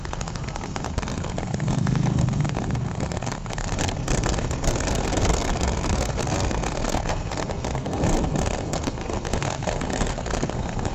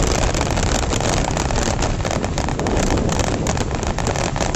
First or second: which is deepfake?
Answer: first